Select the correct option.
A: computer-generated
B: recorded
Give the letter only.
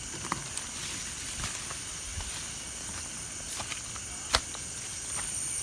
B